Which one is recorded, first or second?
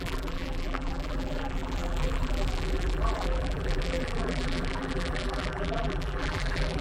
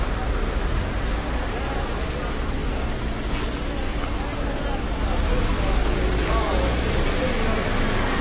second